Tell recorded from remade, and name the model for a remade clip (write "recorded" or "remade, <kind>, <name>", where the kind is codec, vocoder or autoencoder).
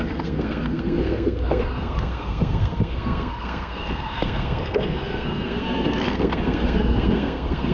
remade, codec, SNAC